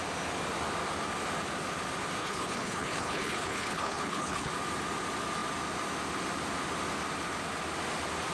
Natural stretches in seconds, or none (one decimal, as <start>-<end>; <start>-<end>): 0.0-2.2; 4.5-8.3